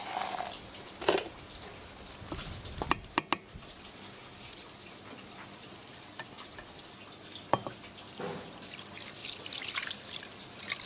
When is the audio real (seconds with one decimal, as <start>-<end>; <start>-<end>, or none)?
0.0-10.9